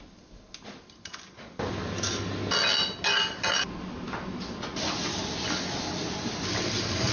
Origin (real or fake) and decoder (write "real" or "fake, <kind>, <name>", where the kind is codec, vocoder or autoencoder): real